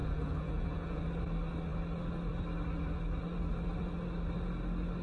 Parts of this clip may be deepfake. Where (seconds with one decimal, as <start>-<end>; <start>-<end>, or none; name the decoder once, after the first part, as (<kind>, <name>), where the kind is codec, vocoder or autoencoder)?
0.0-1.0 (vocoder, Vocos)